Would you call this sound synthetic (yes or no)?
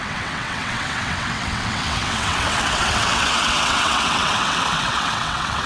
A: yes